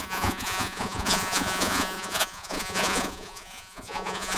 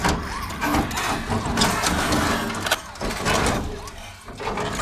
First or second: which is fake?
first